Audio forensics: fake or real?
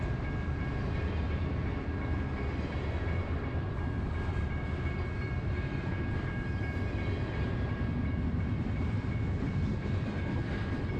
fake